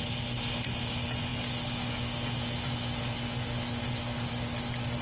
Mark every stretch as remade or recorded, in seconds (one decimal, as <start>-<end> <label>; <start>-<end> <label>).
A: 0.0-5.0 recorded